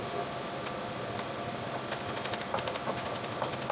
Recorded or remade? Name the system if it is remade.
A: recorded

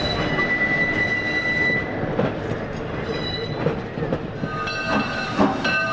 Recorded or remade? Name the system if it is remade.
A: recorded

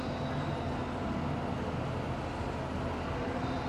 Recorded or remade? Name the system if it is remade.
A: recorded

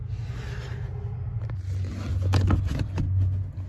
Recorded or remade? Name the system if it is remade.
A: recorded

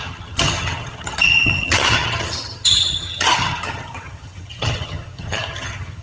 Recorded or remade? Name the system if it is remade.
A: remade, vocoder, HiFi-GAN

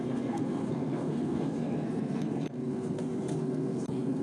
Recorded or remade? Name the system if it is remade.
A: remade, codec, SNAC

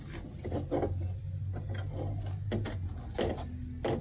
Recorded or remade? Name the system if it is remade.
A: recorded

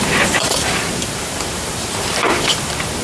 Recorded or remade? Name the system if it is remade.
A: remade, vocoder, BigVGAN v2